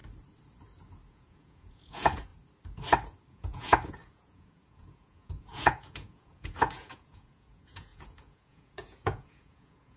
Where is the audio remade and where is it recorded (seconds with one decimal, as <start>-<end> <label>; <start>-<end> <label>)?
0.0-1.1 recorded; 1.1-2.3 remade; 2.3-3.3 recorded; 3.3-10.0 remade